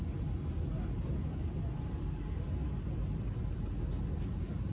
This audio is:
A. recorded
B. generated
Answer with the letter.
A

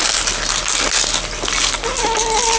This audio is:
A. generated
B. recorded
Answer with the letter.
B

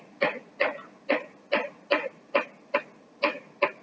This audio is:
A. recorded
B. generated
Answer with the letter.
A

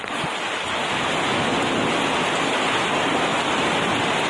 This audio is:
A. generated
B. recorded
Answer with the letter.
B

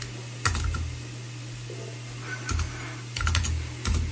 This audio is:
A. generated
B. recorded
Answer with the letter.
B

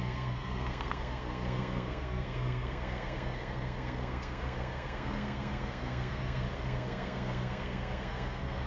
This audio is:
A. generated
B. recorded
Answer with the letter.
A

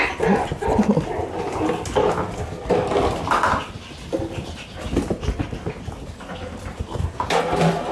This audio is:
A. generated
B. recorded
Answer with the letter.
B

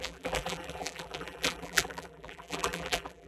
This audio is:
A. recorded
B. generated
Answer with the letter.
B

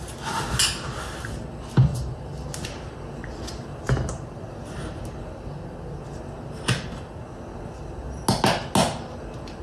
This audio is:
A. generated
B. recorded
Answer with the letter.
B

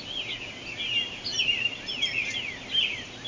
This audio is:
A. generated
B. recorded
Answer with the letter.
B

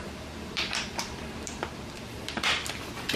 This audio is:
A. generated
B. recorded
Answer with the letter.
A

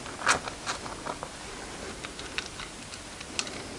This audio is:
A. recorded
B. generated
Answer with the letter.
A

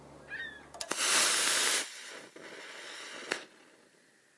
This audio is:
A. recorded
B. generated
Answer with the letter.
A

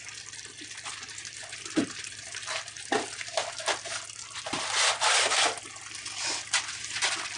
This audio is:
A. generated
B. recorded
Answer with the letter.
B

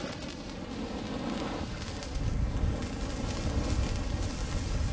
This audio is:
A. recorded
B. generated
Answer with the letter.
A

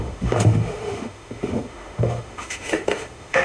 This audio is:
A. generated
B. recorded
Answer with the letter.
A